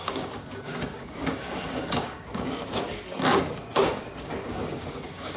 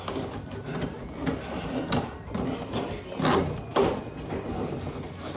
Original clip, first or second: second